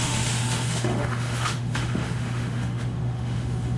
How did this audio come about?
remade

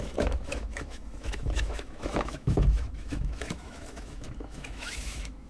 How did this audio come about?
remade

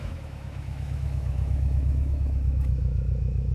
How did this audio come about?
remade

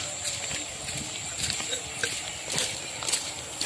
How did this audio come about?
recorded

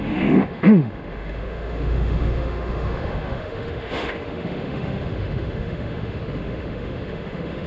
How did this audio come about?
remade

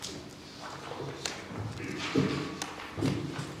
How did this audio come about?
recorded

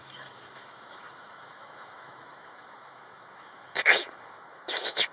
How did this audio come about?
remade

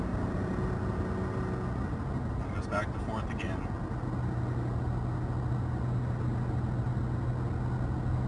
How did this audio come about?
recorded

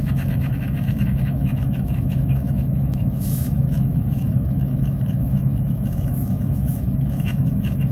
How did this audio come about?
remade